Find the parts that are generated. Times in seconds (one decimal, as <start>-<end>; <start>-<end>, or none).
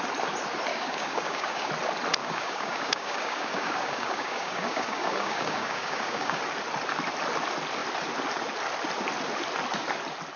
0.7-1.7; 2.2-6.4